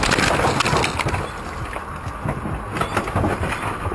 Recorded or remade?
recorded